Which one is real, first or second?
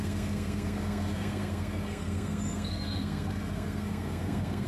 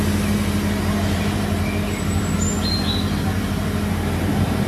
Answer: second